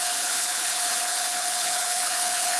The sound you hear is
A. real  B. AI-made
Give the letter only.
B